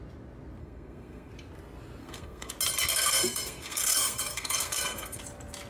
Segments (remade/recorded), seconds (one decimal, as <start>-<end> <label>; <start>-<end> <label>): 0.0-0.6 recorded; 0.6-1.3 remade; 1.3-2.0 recorded; 2.0-2.5 remade; 2.5-2.9 recorded; 2.9-5.2 remade; 5.2-5.7 recorded